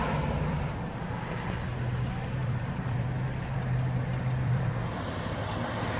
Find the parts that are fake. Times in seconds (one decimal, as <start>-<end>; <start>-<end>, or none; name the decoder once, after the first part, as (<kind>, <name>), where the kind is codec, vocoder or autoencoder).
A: 2.4-4.7 (vocoder, BigVGAN v2)